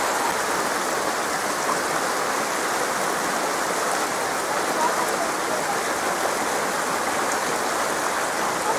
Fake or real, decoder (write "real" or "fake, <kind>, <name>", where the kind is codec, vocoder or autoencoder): real